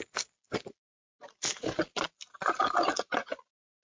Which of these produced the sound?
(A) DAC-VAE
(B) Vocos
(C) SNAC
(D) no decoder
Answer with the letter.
D